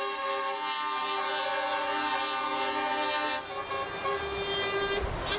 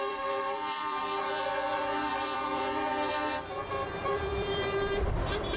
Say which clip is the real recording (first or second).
first